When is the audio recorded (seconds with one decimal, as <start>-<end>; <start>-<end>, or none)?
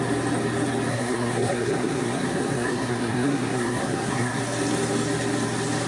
0.0-0.9; 4.4-5.9